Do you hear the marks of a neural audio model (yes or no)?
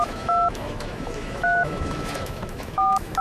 yes